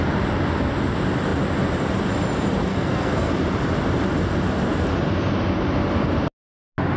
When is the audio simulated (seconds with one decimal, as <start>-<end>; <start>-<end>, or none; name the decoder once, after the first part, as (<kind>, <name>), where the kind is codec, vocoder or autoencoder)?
2.7-3.3 (codec, SNAC)